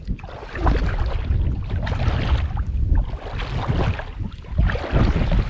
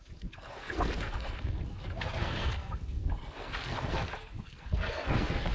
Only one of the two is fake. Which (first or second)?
second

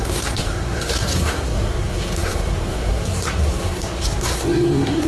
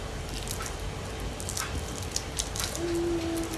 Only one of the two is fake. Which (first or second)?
first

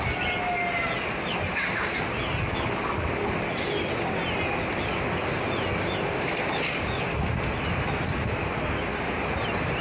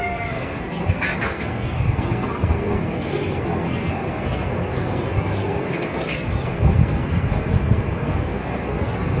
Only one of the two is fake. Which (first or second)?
second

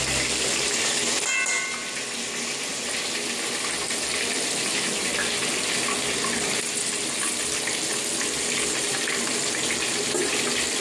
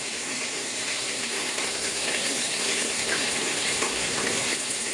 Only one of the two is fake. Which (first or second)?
second